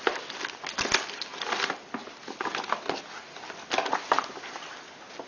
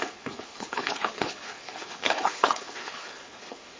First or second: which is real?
first